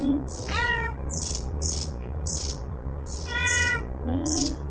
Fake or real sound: fake